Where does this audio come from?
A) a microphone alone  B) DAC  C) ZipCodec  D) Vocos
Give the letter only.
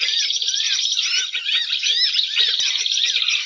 A